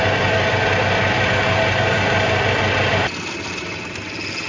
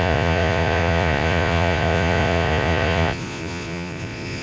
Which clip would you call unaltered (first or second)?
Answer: first